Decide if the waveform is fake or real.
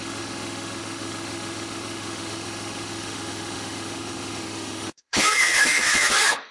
fake